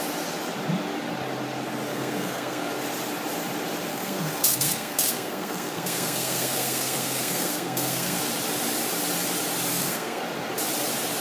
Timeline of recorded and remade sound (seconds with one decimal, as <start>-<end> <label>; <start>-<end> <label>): 0.0-1.9 recorded; 1.9-2.7 remade; 2.7-3.9 recorded; 3.9-8.2 remade; 8.2-9.7 recorded; 9.7-10.2 remade; 10.2-11.2 recorded